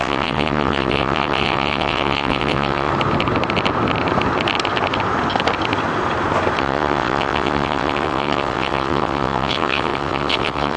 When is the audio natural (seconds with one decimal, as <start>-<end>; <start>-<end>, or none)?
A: 2.9-6.6